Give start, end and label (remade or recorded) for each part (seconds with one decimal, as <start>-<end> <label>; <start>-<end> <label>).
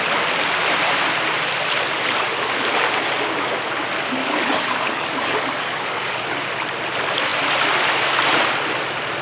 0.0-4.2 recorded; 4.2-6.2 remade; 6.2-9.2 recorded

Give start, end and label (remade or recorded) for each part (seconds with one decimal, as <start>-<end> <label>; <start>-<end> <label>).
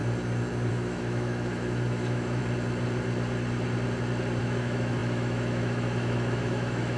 0.0-0.7 recorded; 0.7-2.4 remade; 2.4-4.4 recorded; 4.4-7.0 remade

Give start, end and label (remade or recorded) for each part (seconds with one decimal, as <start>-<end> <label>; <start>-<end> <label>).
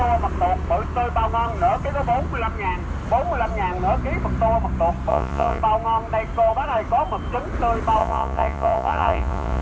0.0-5.1 recorded; 5.1-5.6 remade; 5.6-8.0 recorded; 8.0-9.6 remade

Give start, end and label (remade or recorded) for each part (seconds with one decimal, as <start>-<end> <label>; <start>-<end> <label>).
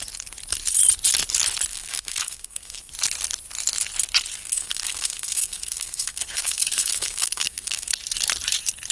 0.0-1.7 recorded; 1.7-2.9 remade; 2.9-4.4 recorded; 4.4-7.9 remade; 7.9-8.9 recorded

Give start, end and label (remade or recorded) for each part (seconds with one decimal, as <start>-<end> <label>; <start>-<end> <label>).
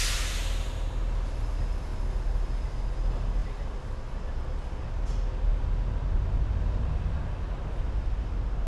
0.0-8.7 recorded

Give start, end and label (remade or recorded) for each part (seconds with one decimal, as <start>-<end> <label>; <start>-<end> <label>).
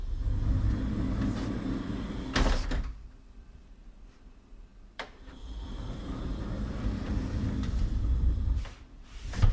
0.0-3.3 recorded; 3.3-9.5 remade